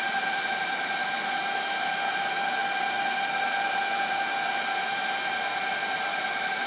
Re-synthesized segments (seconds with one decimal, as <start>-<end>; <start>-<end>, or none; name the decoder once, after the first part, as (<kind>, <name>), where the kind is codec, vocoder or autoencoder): 1.0-2.1 (autoencoder, DAC-VAE); 6.1-6.7